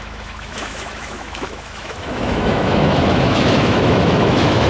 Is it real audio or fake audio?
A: fake